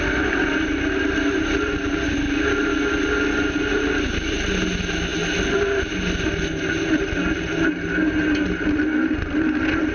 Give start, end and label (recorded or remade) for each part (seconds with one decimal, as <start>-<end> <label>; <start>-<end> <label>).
0.0-9.9 recorded